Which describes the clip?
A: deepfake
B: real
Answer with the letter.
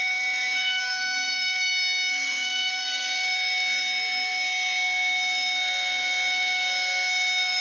A